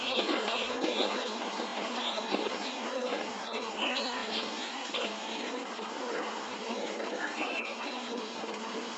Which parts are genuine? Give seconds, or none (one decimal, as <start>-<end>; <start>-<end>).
none